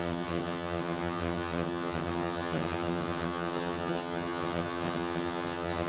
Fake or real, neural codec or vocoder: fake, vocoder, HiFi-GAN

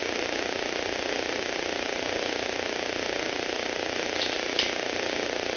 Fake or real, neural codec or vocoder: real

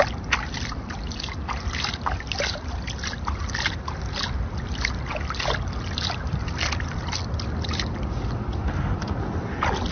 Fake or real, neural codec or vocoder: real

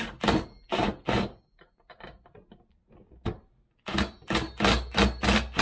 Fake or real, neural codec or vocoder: real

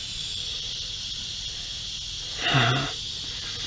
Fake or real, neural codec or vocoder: real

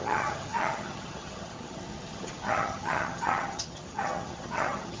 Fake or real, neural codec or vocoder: fake, vocoder, HiFi-GAN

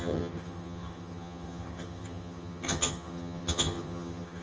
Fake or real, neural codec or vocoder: fake, vocoder, HiFi-GAN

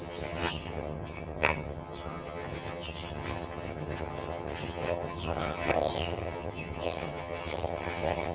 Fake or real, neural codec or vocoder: fake, vocoder, HiFi-GAN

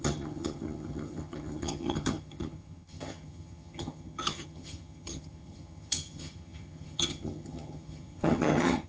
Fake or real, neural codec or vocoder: fake, vocoder, HiFi-GAN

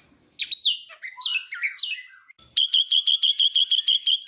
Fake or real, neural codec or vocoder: real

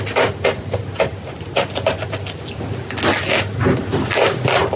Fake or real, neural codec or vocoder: real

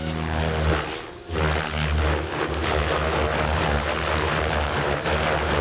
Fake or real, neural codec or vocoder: real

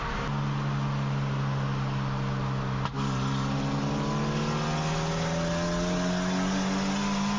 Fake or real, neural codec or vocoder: real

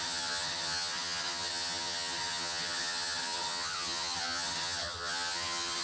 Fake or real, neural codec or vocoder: fake, vocoder, HiFi-GAN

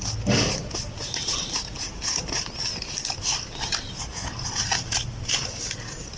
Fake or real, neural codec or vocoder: real